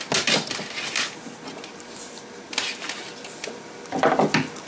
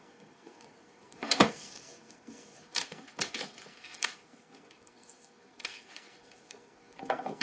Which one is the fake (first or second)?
second